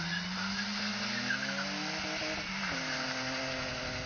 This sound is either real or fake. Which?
real